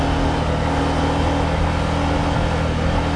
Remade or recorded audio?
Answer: recorded